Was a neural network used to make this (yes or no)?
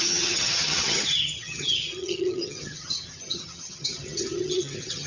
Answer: yes